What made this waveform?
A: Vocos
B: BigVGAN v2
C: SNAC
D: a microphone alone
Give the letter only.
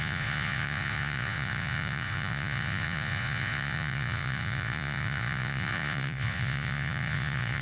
A